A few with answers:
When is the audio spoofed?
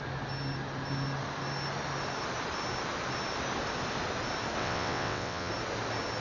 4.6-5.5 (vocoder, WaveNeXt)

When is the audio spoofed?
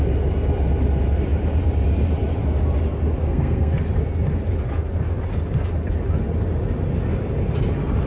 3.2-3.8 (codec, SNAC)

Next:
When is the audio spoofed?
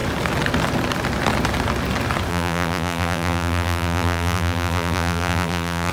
2.3-5.9 (vocoder, BigVGAN v2)